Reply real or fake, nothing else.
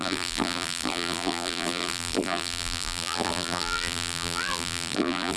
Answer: fake